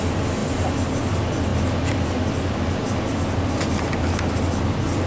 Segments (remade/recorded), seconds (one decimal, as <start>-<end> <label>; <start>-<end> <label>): 0.0-5.1 recorded